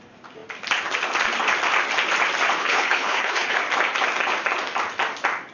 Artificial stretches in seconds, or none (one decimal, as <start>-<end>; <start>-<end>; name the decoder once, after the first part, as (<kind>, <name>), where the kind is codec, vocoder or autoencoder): 2.6-3.6 (codec, HILCodec)